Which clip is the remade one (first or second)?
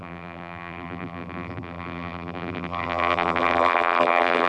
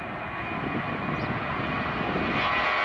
first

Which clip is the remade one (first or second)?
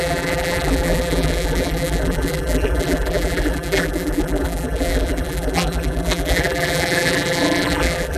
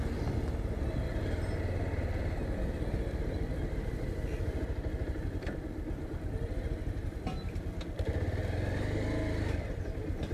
first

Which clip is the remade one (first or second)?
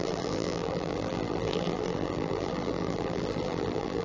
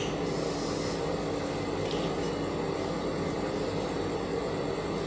first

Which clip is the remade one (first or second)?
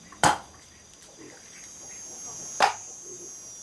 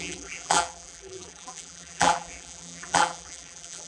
second